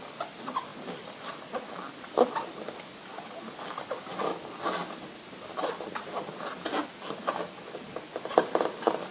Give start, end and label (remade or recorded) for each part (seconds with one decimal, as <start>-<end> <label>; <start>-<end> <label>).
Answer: 0.0-9.1 recorded